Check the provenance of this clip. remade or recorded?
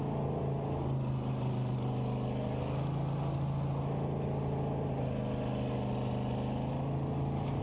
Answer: recorded